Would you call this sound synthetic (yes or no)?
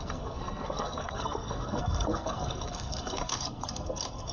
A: yes